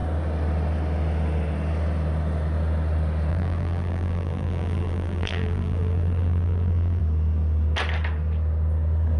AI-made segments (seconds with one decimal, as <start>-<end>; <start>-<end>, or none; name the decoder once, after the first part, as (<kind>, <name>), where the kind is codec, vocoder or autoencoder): 3.3-7.0 (vocoder, BigVGAN v2)